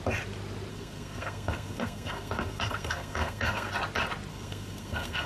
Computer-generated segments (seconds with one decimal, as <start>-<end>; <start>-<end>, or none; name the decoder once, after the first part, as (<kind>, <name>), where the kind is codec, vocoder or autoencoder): 0.7-3.7 (codec, SNAC); 4.3-5.3

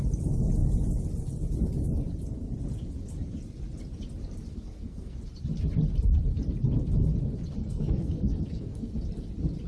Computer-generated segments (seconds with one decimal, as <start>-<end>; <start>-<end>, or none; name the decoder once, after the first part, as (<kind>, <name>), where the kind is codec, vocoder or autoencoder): 4.5-5.2 (codec, SNAC); 7.6-8.9